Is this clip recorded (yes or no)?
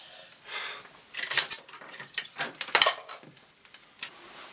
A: yes